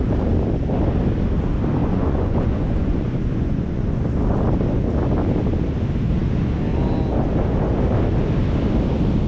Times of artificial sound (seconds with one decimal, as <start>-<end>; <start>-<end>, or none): 1.8-4.0